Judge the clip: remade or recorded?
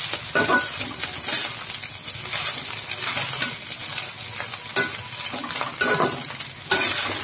recorded